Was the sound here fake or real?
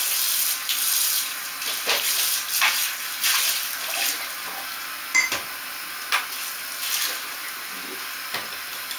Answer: real